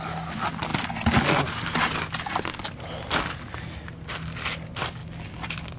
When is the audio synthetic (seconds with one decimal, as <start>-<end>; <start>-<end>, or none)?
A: none